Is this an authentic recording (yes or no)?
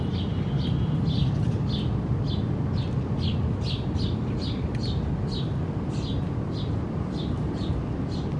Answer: yes